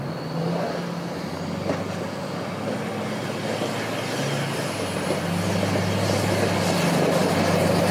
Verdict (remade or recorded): recorded